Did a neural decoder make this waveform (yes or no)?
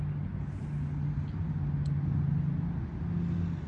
no